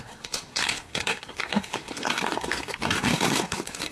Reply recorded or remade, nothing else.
remade